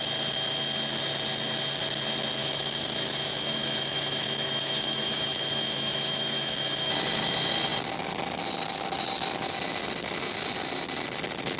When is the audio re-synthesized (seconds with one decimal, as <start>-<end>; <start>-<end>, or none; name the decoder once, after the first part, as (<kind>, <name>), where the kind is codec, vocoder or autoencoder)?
2.4-6.9 (autoencoder, DAC-VAE)